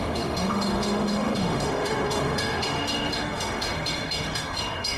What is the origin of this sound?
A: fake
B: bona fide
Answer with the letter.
A